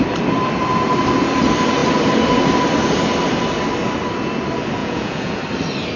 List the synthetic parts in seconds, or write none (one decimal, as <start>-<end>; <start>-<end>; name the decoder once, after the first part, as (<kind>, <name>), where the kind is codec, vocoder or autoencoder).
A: 4.8-5.4 (vocoder, Vocos)